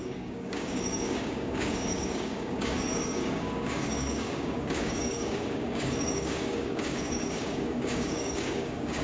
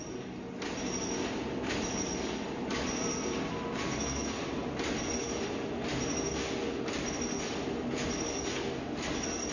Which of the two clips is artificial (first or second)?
first